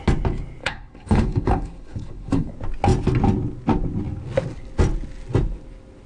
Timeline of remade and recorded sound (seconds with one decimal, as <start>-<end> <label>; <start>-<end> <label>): 0.0-0.6 recorded; 0.6-2.5 remade; 2.5-6.1 recorded